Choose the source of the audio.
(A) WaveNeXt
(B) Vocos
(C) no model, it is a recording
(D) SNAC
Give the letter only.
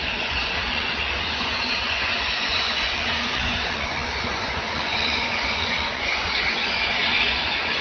B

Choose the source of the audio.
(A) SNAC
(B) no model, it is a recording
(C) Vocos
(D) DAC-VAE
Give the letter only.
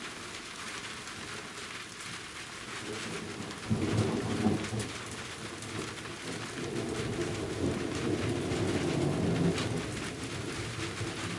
B